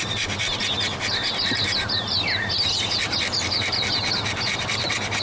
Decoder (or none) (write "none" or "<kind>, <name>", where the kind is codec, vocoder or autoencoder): none